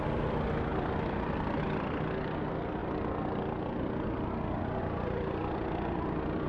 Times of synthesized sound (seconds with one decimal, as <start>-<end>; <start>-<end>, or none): 0.7-1.6